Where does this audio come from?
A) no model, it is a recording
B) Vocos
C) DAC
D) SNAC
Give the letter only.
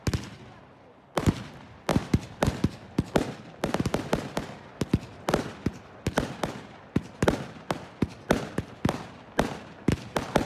A